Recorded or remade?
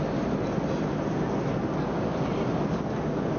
recorded